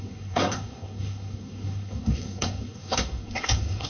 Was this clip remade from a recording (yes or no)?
yes